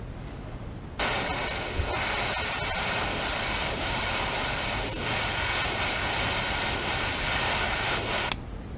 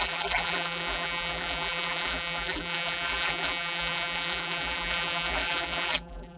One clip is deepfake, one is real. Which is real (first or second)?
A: first